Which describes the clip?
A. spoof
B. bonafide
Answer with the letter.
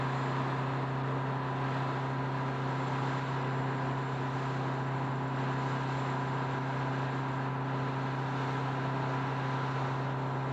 B